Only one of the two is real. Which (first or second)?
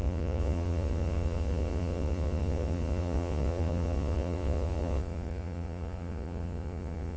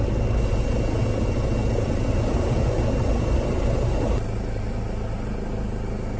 second